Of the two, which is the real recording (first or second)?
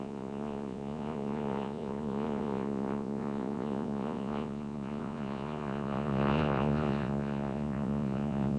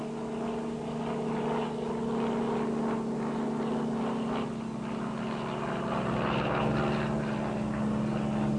second